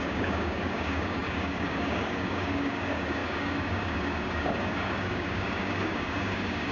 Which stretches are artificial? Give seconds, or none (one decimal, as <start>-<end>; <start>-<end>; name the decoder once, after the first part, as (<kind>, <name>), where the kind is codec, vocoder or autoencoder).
0.0-6.7 (codec, DAC)